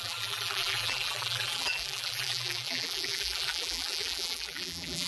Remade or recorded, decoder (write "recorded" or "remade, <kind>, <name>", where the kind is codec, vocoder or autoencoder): remade, vocoder, BigVGAN v2